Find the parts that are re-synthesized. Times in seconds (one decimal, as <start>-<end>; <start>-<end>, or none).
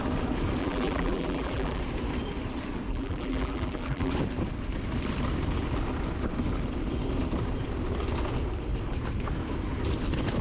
0.6-1.8; 2.9-4.1